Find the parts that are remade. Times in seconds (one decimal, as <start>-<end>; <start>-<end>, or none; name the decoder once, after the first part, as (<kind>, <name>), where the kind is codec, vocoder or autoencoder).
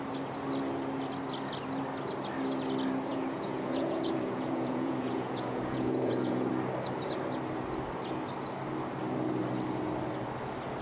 3.1-6.5 (vocoder, Vocos)